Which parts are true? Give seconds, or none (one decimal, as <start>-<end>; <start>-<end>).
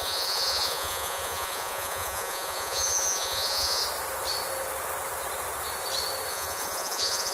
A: 3.8-6.3